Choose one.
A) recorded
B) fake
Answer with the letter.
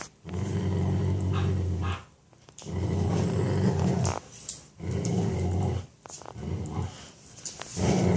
B